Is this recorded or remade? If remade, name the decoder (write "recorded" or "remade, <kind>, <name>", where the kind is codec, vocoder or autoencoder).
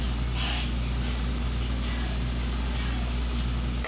recorded